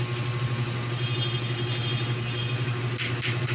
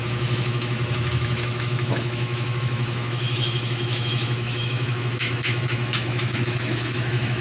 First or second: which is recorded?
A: first